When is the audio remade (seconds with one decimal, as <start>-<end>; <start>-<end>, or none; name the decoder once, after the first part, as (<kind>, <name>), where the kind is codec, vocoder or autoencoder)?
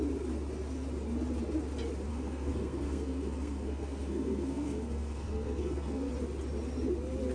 2.1-6.1 (codec, SNAC)